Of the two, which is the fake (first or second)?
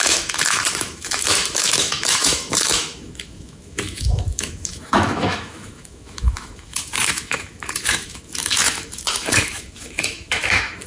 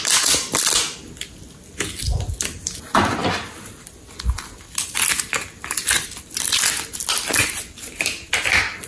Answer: first